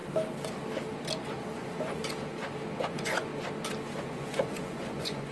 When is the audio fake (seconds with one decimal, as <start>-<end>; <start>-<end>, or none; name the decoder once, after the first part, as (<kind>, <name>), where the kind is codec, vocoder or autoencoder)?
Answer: 1.2-2.0 (vocoder, Vocos); 2.8-3.3; 4.0-5.3